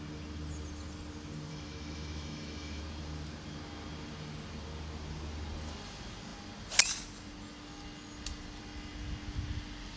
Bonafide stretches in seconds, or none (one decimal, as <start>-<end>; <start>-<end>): 0.0-1.5; 2.8-10.0